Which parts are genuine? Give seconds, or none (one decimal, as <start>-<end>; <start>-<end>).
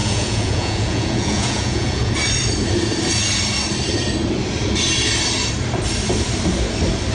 2.1-7.1